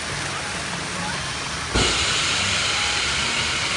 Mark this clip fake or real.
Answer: real